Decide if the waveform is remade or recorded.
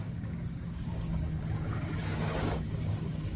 remade